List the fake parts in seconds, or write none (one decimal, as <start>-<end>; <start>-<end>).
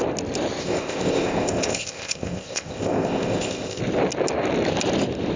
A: 0.6-3.8